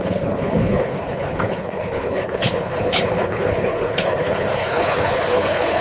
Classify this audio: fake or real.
fake